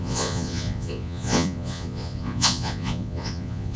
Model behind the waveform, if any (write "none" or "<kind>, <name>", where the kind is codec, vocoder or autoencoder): vocoder, Vocos